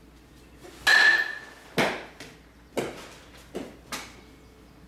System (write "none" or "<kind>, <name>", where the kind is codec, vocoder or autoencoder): none